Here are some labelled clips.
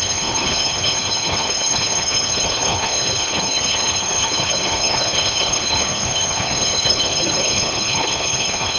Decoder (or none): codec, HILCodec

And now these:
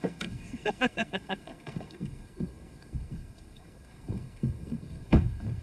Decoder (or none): codec, SNAC